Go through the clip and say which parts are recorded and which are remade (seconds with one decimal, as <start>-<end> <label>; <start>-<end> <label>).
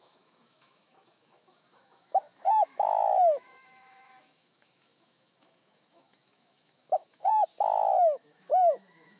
0.0-7.3 remade; 7.3-7.9 recorded; 7.9-9.2 remade